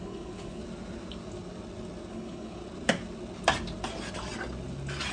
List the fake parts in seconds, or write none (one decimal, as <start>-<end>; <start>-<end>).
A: 0.0-0.6; 2.1-2.6

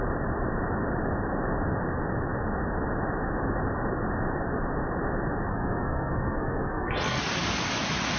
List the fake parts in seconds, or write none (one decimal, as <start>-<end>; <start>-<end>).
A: 5.5-7.2